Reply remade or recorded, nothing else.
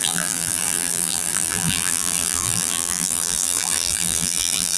remade